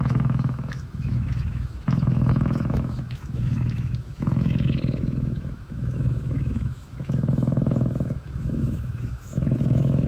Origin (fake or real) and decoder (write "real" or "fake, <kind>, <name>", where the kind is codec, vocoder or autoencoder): fake, autoencoder, DAC-VAE